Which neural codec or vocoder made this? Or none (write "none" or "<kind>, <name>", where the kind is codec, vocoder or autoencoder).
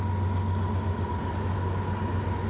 none